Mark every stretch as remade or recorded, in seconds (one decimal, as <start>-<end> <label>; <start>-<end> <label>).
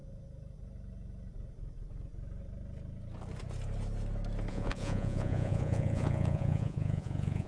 0.0-4.5 recorded; 4.5-7.5 remade